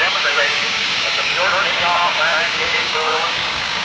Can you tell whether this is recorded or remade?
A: remade